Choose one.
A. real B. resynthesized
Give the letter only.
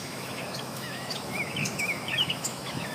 B